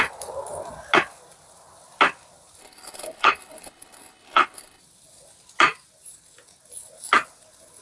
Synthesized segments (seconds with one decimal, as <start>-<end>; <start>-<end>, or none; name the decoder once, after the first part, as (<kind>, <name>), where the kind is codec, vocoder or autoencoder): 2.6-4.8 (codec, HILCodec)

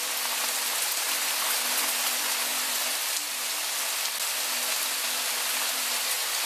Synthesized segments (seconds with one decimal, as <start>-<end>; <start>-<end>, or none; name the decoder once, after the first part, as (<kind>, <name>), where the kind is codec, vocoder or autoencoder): none

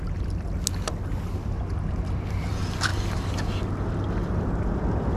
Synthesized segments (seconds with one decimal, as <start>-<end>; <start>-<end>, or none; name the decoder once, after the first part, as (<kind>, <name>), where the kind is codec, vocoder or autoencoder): none

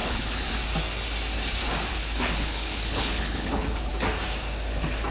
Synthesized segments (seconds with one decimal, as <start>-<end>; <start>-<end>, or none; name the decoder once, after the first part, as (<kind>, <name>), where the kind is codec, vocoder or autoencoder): 0.0-0.5 (codec, HILCodec); 1.9-3.9